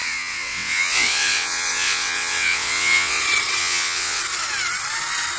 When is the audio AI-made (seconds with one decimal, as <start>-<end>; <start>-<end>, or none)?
0.0-3.2; 3.6-4.2